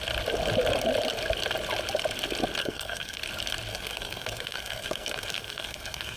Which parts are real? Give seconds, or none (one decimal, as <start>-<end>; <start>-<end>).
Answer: 0.0-2.6; 3.2-3.7